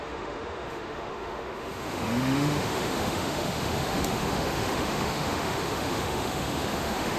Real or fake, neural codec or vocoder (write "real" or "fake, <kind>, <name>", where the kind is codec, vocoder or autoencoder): fake, autoencoder, DAC-VAE